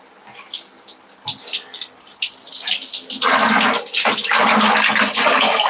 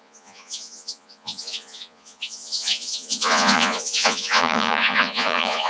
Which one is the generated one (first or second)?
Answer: second